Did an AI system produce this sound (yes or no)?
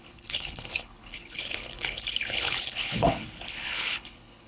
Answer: yes